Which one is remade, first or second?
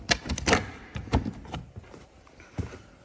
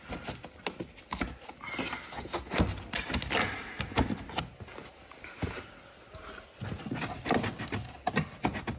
first